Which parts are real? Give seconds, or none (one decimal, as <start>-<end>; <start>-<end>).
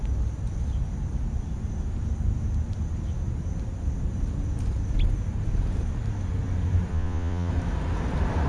0.0-6.9; 7.5-8.5